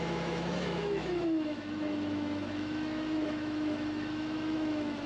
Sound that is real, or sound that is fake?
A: fake